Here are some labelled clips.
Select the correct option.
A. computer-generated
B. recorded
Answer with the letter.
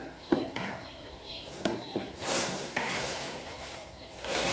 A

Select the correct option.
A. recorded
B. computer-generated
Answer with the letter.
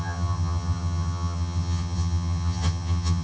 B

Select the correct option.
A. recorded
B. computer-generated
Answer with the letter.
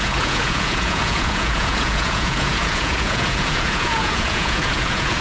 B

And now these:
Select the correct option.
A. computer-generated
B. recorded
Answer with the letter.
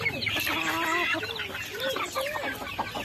B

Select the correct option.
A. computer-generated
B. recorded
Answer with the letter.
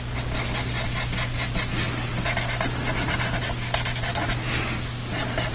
B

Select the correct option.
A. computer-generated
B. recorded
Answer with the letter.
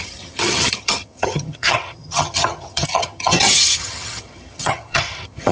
A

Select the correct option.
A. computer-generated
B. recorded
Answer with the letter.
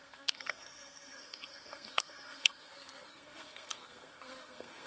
A